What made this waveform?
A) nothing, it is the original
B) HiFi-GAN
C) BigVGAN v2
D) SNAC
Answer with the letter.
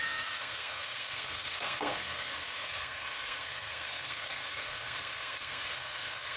D